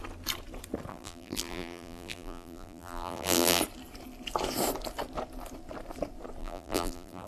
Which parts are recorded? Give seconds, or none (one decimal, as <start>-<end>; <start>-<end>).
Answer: 0.0-0.9; 3.6-6.4